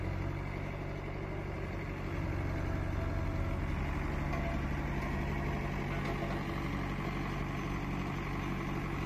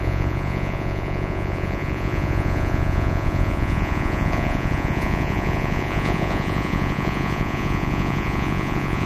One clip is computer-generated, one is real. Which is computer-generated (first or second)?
second